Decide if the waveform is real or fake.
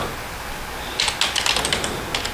real